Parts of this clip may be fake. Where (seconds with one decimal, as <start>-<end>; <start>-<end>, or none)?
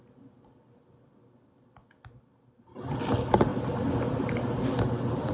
none